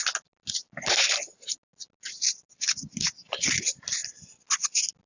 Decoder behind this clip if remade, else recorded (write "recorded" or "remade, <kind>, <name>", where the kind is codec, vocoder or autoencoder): recorded